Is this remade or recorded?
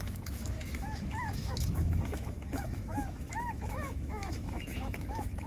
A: remade